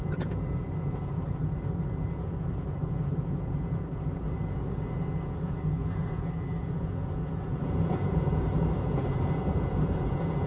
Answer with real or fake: fake